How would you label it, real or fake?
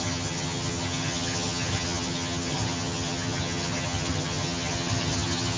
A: fake